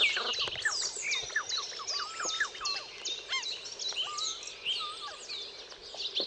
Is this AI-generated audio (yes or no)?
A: no